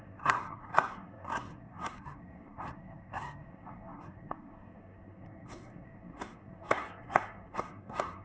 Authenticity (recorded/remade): remade